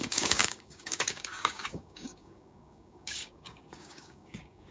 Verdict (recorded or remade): remade